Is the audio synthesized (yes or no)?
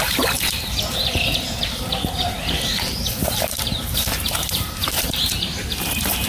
yes